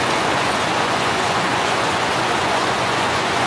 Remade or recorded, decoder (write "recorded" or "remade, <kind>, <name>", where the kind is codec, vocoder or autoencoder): remade, vocoder, Vocos